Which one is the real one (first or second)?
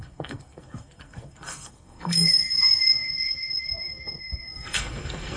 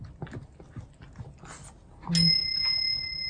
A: second